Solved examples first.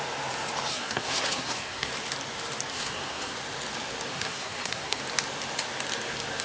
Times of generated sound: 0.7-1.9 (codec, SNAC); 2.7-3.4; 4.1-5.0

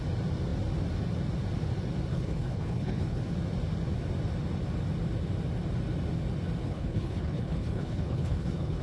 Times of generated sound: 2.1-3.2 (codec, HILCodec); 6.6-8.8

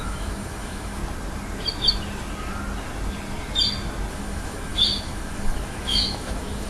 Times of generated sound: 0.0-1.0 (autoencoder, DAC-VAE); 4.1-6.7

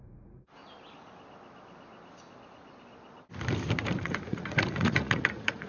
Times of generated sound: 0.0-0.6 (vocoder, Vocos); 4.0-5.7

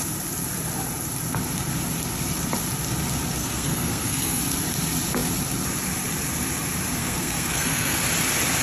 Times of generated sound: 3.4-4.4 (codec, SNAC); 7.0-8.0